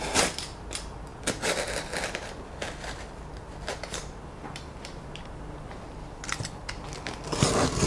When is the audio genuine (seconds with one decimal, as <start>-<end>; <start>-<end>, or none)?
0.0-7.9